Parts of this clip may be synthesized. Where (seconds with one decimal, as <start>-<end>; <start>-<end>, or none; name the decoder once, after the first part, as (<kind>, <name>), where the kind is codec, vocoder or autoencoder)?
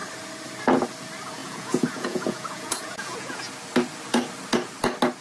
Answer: 1.4-3.5 (vocoder, Vocos)